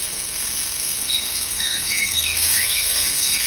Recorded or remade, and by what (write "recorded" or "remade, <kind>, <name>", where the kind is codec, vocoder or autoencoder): remade, codec, SNAC